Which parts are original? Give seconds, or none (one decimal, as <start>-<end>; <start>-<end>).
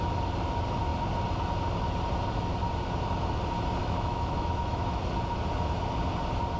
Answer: 0.0-3.8; 5.0-6.6